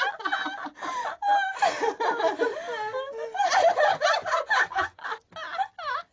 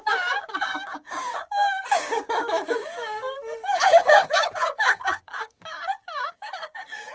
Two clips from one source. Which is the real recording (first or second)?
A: first